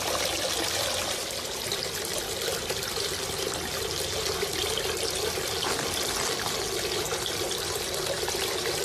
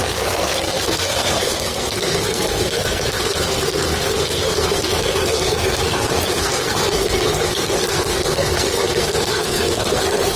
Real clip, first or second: first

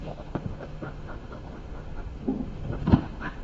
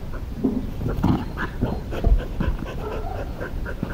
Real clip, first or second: second